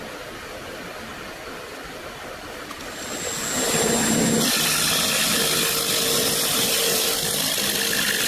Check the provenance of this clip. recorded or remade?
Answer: recorded